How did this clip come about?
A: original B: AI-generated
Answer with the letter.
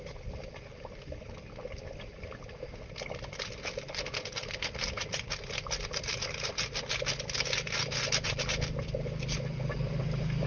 A